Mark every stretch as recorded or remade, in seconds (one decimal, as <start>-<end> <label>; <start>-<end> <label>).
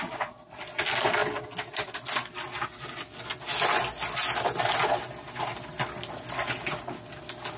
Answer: 0.0-7.6 recorded